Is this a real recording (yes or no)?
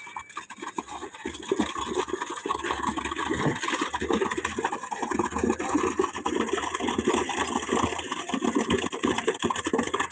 yes